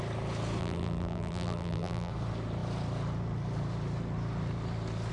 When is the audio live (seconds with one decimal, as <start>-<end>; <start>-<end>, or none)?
0.0-0.6; 2.1-5.1